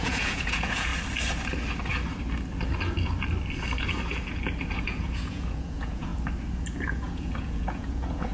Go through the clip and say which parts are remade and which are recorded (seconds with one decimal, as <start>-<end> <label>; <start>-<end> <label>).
0.0-0.9 remade; 0.9-4.8 recorded; 4.8-6.1 remade; 6.1-6.9 recorded; 6.9-8.3 remade